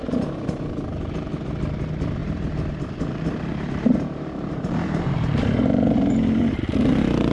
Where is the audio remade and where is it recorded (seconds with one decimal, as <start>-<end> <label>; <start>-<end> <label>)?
0.0-2.2 recorded; 2.2-6.6 remade; 6.6-7.3 recorded